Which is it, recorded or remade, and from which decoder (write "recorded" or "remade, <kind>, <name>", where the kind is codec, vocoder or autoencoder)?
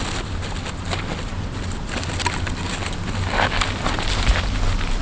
recorded